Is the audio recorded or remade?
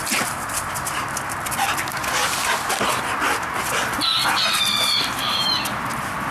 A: recorded